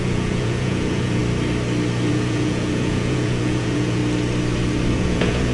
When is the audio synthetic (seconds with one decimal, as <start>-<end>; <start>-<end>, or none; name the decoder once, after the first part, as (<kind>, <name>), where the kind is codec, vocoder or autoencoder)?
0.0-1.2 (vocoder, Vocos); 2.1-4.0; 4.9-5.5